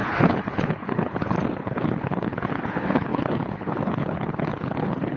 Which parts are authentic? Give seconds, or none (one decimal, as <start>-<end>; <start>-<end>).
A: none